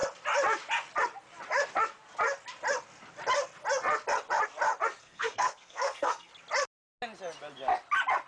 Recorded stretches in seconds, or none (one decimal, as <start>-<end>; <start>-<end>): 0.0-5.0; 6.3-8.3